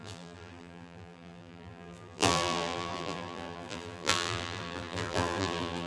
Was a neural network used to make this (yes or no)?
yes